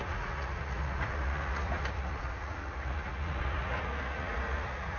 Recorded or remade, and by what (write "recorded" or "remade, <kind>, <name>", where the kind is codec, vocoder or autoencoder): remade, vocoder, Vocos